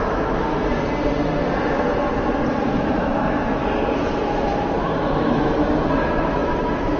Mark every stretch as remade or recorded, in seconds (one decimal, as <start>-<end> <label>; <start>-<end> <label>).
0.0-0.4 remade; 0.4-2.6 recorded; 2.6-3.6 remade; 3.6-4.1 recorded; 4.1-4.5 remade; 4.5-5.1 recorded; 5.1-5.6 remade; 5.6-6.2 recorded; 6.2-7.0 remade